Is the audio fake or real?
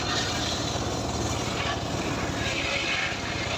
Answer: real